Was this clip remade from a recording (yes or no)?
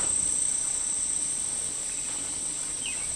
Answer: no